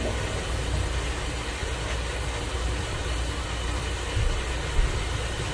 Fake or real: real